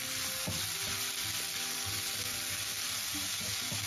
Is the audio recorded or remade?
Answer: recorded